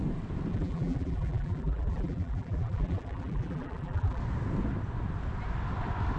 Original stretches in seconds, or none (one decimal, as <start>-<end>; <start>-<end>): 0.0-0.5; 4.2-6.2